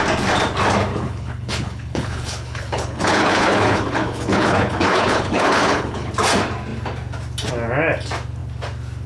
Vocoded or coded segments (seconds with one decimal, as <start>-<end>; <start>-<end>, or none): 0.9-6.1

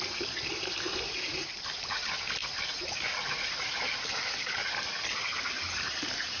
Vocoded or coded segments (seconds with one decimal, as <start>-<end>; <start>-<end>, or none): 0.0-6.4

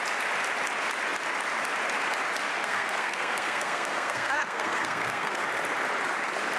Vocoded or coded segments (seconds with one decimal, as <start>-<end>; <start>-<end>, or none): 2.6-5.4

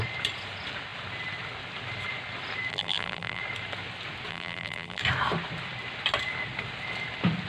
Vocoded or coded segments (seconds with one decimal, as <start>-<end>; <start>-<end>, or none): 2.7-3.4; 4.3-5.0

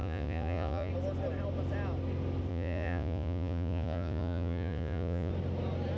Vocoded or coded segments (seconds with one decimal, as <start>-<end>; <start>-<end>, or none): 0.0-0.9; 2.5-5.3

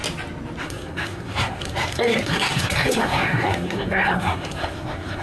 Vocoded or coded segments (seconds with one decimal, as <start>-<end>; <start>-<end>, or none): 0.6-5.2

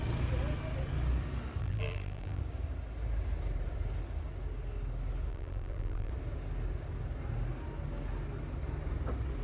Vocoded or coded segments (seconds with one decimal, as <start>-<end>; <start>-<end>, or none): 1.6-2.4; 5.3-6.1

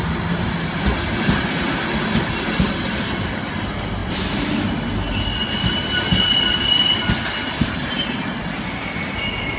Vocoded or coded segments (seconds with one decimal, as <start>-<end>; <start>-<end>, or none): 4.0-4.6